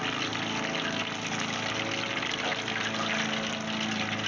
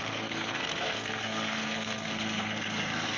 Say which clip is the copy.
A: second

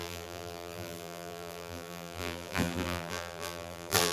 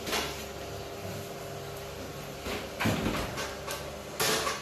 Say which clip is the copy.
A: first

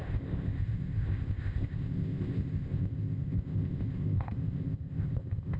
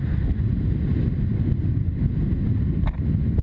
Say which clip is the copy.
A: first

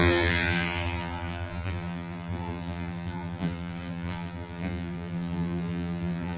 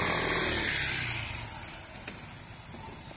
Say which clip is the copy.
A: first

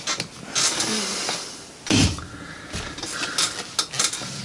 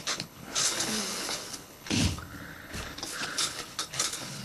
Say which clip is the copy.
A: second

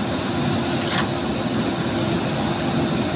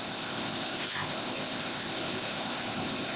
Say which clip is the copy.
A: second